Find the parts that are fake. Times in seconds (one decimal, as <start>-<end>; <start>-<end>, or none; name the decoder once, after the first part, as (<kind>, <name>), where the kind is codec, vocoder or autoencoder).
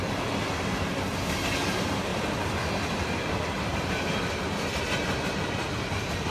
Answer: none